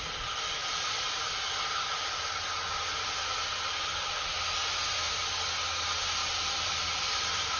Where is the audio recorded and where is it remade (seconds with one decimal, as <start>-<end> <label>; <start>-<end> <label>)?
0.0-0.6 recorded; 0.6-1.5 remade; 1.5-6.2 recorded; 6.2-7.6 remade